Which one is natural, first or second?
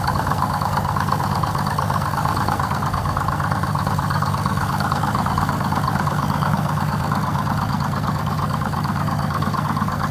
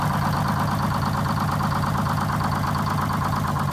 second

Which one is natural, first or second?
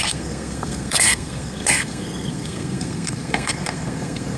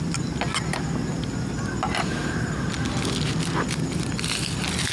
second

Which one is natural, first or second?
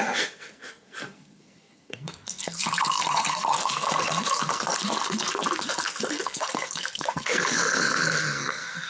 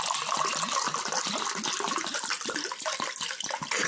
second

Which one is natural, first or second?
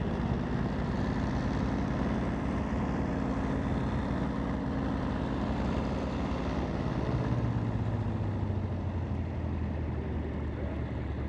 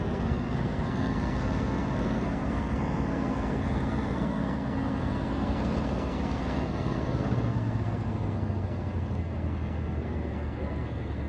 first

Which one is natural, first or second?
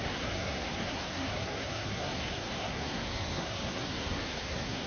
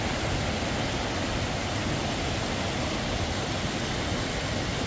second